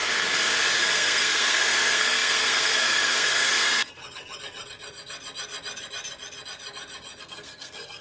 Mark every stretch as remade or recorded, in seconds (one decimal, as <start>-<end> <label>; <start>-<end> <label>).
0.0-0.7 recorded; 0.7-4.0 remade; 4.0-7.2 recorded; 7.2-8.0 remade